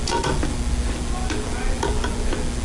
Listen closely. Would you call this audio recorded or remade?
recorded